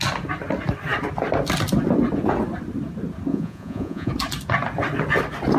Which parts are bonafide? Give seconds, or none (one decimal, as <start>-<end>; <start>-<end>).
0.0-3.3; 4.1-5.6